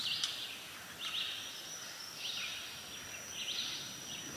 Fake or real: real